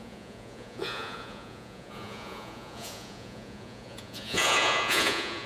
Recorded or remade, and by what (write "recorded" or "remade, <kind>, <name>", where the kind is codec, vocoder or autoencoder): remade, vocoder, Vocos